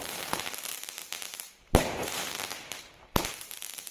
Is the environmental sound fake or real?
fake